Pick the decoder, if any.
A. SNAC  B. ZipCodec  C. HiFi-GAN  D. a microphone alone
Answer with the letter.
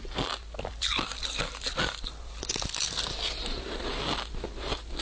D